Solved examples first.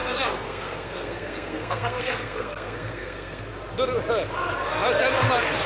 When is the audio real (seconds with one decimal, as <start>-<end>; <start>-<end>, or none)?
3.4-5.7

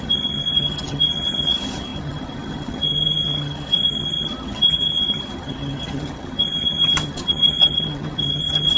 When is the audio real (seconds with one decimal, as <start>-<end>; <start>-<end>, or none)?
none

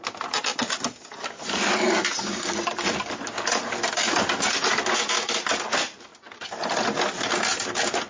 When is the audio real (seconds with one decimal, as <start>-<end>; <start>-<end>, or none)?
0.0-8.1